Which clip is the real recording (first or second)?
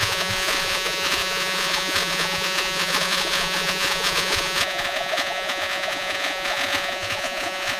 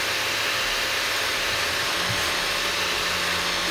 second